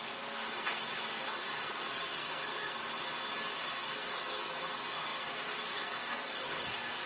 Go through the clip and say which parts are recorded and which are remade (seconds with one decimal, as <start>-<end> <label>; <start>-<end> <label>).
0.0-2.8 remade; 2.8-3.5 recorded; 3.5-7.1 remade